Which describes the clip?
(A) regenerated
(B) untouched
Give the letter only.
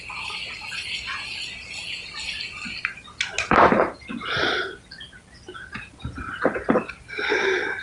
B